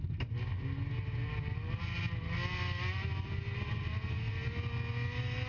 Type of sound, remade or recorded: recorded